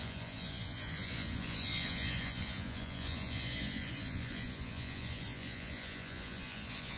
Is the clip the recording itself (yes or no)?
no